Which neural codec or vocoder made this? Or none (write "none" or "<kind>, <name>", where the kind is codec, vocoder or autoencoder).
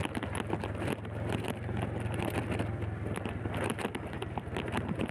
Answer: none